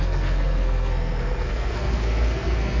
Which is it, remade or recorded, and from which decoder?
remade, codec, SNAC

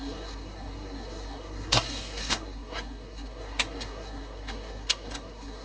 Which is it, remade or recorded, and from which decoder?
remade, codec, SNAC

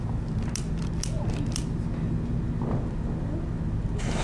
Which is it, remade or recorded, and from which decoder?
recorded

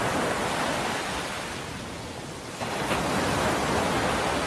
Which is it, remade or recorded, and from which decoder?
recorded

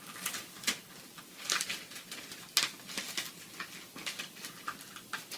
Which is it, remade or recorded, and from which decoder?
recorded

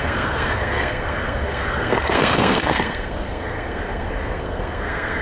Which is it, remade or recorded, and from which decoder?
remade, codec, SNAC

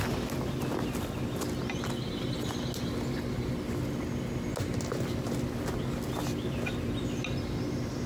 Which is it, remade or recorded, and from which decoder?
recorded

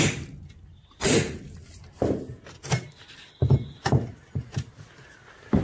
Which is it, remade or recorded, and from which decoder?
recorded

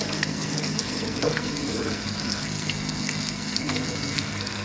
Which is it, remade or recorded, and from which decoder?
remade, codec, SNAC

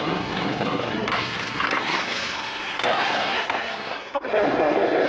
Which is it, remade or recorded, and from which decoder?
remade, codec, SNAC